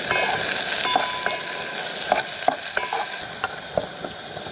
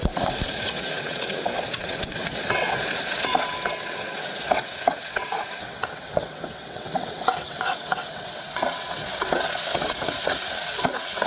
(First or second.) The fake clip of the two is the second